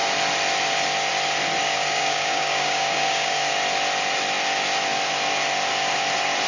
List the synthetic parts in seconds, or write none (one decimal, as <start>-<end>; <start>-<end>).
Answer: 1.6-3.5